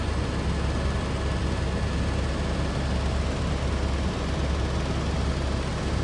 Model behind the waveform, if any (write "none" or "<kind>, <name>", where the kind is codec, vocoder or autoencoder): none